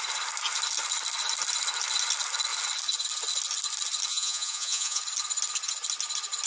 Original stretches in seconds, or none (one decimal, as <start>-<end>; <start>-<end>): 0.0-4.1; 5.0-6.5